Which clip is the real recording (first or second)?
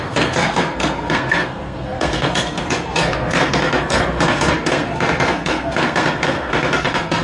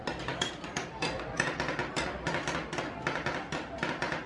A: second